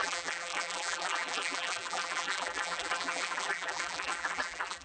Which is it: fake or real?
fake